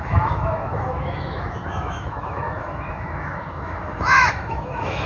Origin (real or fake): fake